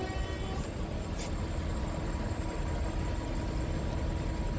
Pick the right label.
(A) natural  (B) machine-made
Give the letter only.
A